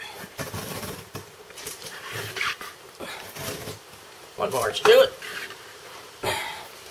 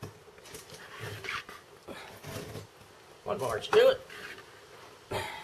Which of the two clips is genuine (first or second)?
second